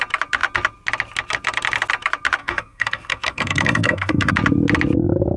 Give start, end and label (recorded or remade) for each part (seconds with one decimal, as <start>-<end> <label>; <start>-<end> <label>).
0.0-2.4 recorded; 2.4-4.3 remade; 4.3-5.4 recorded